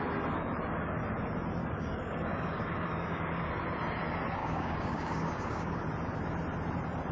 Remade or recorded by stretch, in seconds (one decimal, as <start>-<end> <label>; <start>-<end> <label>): 0.0-1.6 recorded; 1.6-3.5 remade; 3.5-4.4 recorded; 4.4-5.8 remade; 5.8-7.1 recorded

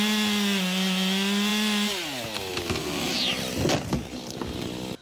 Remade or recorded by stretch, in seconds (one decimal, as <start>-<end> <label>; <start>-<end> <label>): 0.0-5.0 recorded

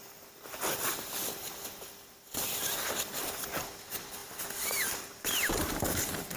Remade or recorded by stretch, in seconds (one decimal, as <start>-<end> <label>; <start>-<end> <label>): 0.0-6.4 recorded

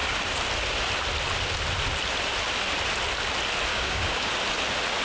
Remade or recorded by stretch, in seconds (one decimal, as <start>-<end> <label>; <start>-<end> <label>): 0.0-3.7 recorded; 3.7-4.3 remade; 4.3-5.0 recorded

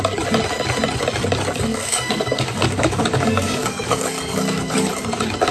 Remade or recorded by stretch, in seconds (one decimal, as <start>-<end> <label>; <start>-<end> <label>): 0.0-1.7 recorded; 1.7-4.7 remade; 4.7-5.5 recorded